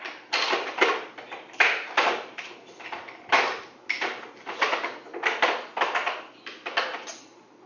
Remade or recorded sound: recorded